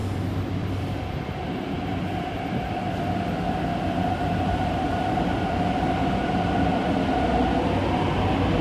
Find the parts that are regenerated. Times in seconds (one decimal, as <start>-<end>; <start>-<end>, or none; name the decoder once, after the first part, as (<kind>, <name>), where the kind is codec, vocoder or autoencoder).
0.0-5.1 (vocoder, BigVGAN v2)